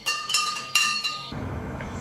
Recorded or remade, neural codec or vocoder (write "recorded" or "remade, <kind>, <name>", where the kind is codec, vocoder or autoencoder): remade, autoencoder, DAC-VAE